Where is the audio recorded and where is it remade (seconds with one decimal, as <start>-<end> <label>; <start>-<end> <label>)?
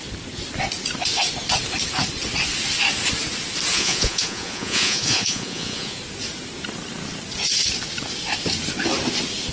0.0-3.7 recorded; 3.7-6.0 remade; 6.0-9.5 recorded